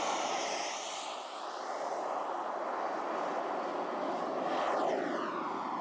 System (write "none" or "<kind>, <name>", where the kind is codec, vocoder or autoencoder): none